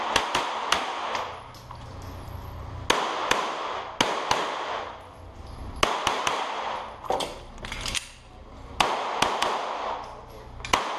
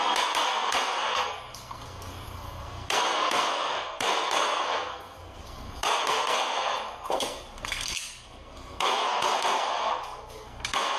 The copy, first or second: second